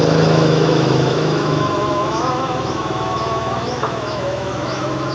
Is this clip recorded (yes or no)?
no